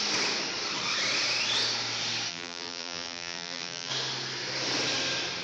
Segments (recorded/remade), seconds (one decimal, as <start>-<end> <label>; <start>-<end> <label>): 0.0-2.3 recorded; 2.3-3.9 remade; 3.9-5.4 recorded